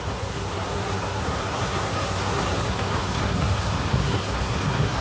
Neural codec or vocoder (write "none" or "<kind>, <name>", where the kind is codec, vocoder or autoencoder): codec, SNAC